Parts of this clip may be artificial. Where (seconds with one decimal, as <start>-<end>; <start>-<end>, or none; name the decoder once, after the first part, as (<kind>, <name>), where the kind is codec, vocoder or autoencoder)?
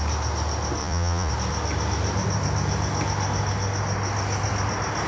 0.8-1.3 (vocoder, Vocos)